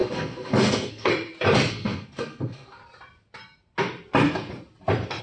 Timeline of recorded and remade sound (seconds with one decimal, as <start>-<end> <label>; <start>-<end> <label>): 0.0-1.1 remade; 1.1-1.7 recorded; 1.7-2.8 remade; 2.8-5.2 recorded